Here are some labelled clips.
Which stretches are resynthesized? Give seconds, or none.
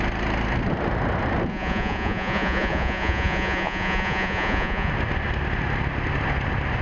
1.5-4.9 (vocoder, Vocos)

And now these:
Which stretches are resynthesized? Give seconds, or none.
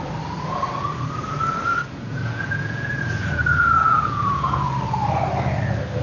1.7-4.7 (vocoder, Vocos)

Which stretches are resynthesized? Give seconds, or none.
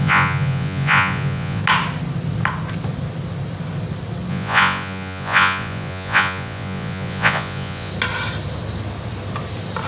0.0-1.6 (vocoder, Vocos); 4.3-7.9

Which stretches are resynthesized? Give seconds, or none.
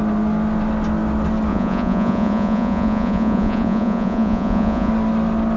1.5-4.9 (vocoder, Vocos)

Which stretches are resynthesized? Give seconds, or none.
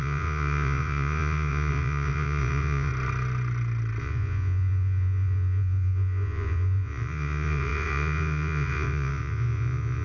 0.0-2.9 (vocoder, Vocos); 4.0-10.0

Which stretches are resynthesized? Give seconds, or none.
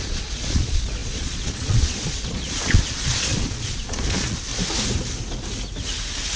0.0-4.5 (vocoder, Vocos)